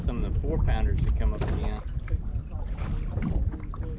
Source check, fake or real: real